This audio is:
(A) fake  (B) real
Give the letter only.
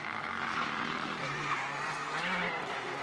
A